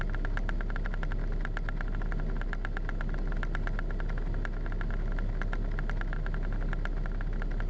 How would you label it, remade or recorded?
recorded